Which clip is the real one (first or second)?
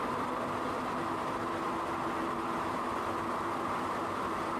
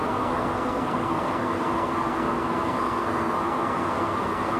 first